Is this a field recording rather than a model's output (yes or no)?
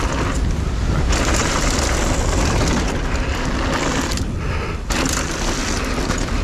yes